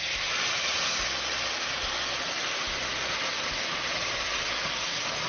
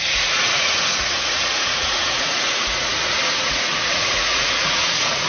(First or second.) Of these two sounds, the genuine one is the first